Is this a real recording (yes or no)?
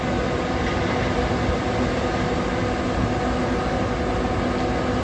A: yes